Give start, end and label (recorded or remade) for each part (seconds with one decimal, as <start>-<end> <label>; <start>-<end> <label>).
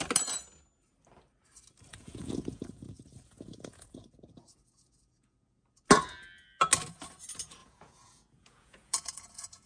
0.0-1.9 recorded; 1.9-5.8 remade; 5.8-7.6 recorded; 7.6-9.7 remade